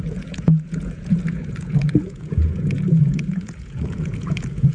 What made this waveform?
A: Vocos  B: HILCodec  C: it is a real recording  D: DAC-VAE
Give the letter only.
A